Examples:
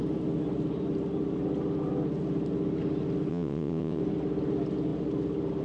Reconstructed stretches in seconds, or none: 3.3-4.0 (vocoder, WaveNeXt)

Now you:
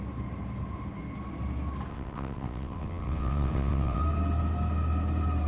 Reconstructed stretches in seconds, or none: 1.9-4.0 (vocoder, WaveNeXt)